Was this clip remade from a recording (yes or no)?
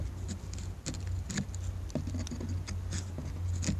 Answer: no